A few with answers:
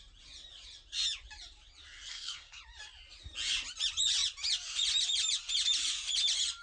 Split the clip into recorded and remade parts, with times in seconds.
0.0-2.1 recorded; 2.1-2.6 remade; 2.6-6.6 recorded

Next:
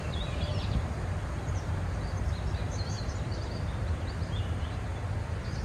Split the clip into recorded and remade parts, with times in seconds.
0.0-4.9 remade; 4.9-5.6 recorded

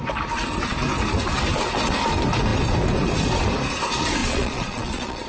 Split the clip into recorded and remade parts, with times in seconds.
0.0-4.2 recorded; 4.2-5.3 remade

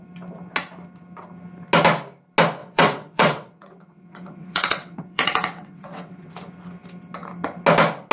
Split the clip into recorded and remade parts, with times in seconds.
0.0-2.6 recorded; 2.6-6.3 remade; 6.3-8.1 recorded

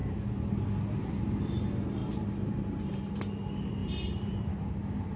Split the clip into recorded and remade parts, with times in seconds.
0.0-2.0 recorded; 2.0-3.1 remade; 3.1-3.8 recorded; 3.8-4.5 remade; 4.5-5.2 recorded

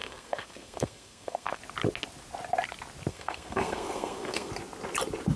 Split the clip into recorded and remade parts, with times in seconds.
0.0-1.6 remade; 1.6-3.1 recorded; 3.1-4.5 remade; 4.5-5.4 recorded

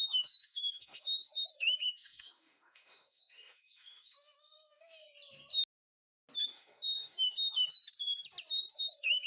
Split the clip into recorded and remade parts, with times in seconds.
0.0-5.0 remade; 5.0-6.5 recorded; 6.5-7.6 remade; 7.6-8.7 recorded; 8.7-9.3 remade

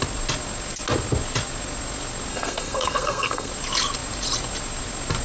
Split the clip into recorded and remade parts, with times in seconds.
0.0-2.3 recorded; 2.3-3.5 remade; 3.5-5.2 recorded